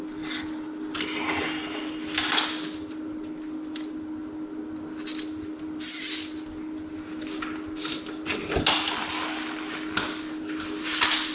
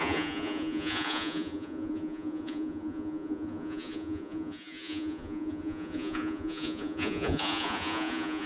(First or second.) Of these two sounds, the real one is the first